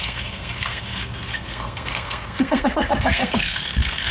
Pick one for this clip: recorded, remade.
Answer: remade